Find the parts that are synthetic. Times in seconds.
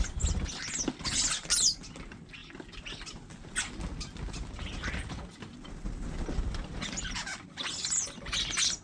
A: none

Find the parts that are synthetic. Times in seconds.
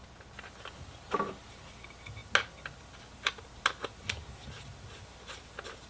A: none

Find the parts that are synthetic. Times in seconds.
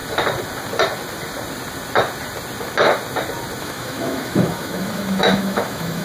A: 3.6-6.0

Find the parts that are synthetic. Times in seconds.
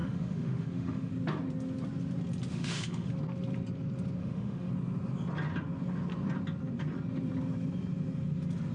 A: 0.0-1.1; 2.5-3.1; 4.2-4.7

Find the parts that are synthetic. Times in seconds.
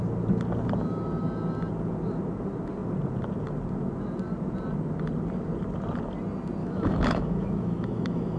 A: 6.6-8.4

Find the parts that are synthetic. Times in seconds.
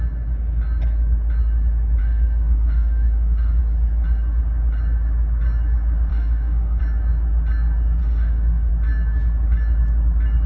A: 2.0-3.6; 6.1-6.8; 8.0-8.7